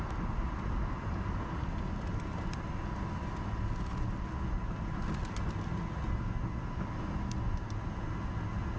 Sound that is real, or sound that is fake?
real